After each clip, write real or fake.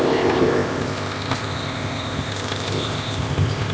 fake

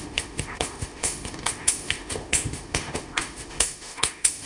fake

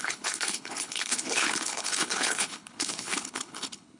fake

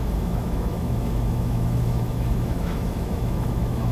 fake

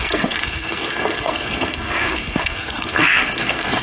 fake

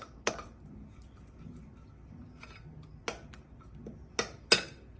real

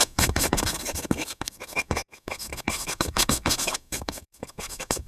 fake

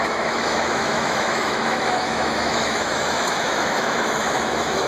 fake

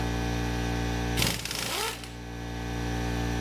real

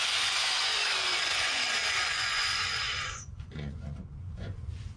fake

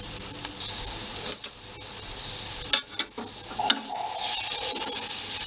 real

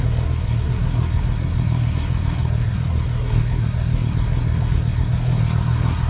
fake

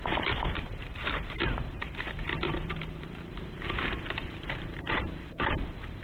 fake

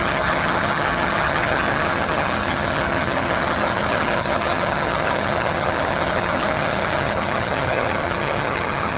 fake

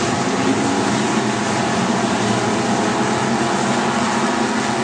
real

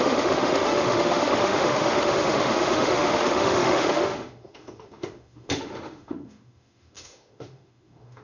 fake